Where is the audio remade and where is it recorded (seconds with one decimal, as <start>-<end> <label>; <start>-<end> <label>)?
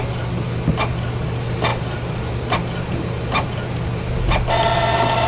0.0-5.3 recorded